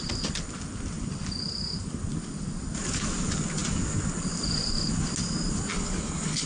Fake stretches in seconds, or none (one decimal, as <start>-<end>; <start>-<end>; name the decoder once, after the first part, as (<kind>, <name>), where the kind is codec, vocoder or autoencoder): 5.7-6.5 (codec, HILCodec)